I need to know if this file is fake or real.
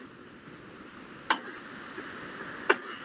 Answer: real